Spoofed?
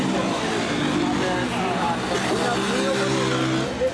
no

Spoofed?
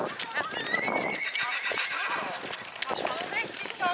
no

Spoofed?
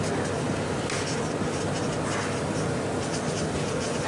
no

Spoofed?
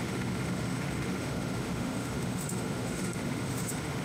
yes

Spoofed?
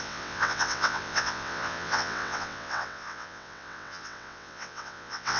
yes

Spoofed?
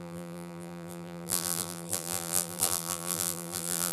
yes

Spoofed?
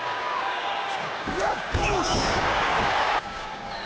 yes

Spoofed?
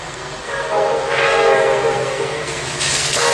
yes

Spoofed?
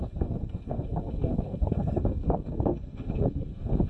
yes